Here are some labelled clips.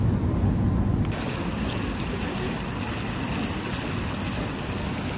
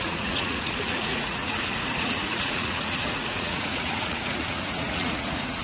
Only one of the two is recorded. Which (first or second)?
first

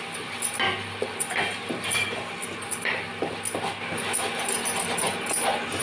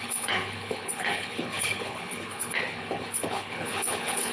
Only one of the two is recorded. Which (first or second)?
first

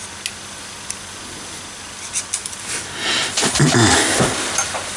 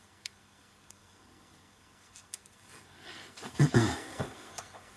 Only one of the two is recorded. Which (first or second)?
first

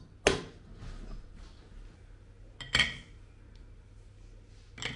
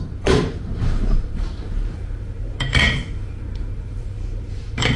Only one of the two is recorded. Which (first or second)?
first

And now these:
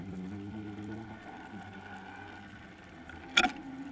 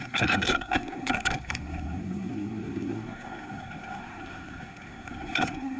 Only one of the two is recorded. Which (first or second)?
first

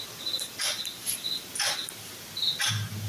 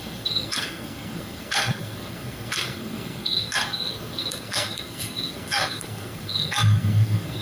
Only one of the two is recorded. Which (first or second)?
first